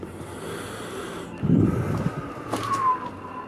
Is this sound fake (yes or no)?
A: no